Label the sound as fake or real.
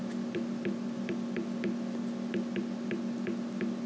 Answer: real